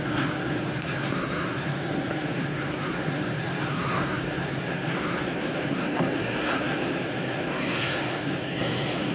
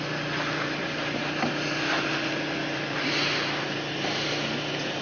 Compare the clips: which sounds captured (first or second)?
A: second